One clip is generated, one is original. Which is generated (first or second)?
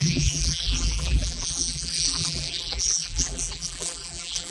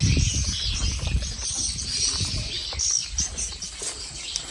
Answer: first